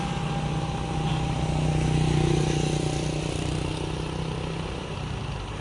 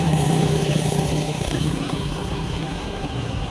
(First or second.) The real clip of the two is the first